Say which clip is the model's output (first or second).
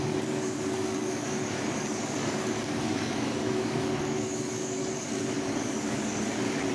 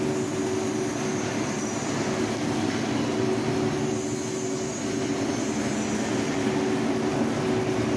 first